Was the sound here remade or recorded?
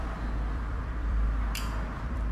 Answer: remade